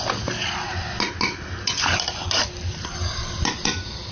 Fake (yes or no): no